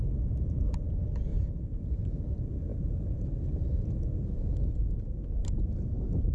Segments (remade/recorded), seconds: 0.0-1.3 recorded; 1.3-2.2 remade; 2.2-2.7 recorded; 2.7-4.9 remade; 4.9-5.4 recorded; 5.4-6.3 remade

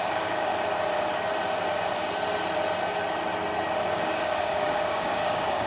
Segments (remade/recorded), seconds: 0.0-0.5 remade; 0.5-3.9 recorded; 3.9-5.7 remade

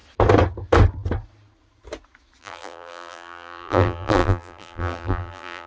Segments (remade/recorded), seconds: 0.0-2.4 recorded; 2.4-5.7 remade

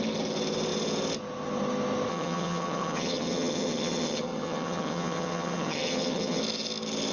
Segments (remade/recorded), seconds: 0.0-2.1 recorded; 2.1-6.4 remade; 6.4-7.1 recorded

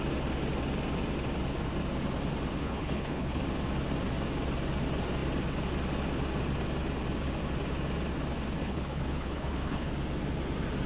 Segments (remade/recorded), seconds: 0.0-2.6 recorded; 2.6-3.4 remade; 3.4-8.6 recorded; 8.6-9.9 remade; 9.9-10.9 recorded

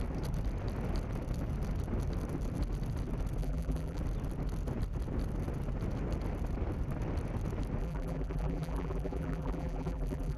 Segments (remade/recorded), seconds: 0.0-3.4 recorded; 3.4-4.0 remade; 4.0-7.8 recorded; 7.8-10.4 remade

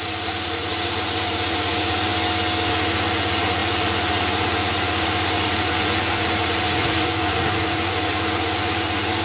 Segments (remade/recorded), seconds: 0.0-2.1 remade; 2.1-2.7 recorded; 2.7-9.2 remade

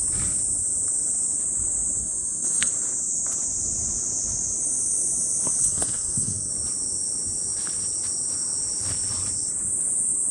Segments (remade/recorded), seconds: 0.0-2.0 recorded; 2.0-2.7 remade; 2.7-5.6 recorded; 5.6-6.5 remade; 6.5-10.3 recorded